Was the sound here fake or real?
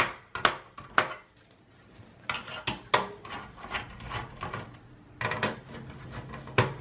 real